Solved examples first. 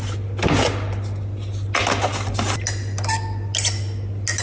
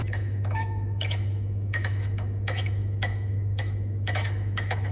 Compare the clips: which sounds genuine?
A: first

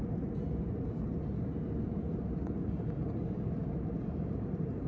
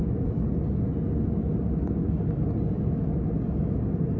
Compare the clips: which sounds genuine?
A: second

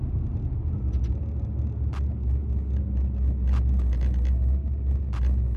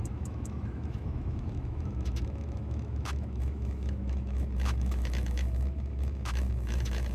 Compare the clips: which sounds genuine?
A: first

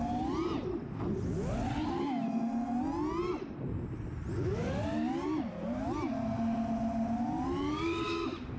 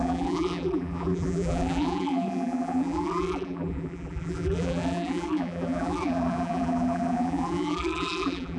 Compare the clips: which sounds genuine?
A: first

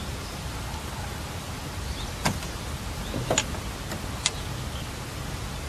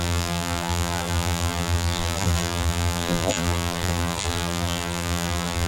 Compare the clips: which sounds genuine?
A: first